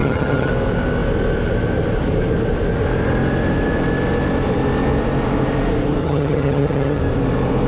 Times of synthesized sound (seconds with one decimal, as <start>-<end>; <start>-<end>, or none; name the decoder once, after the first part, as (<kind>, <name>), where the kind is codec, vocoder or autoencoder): 0.0-0.5 (vocoder, HiFi-GAN); 6.0-7.0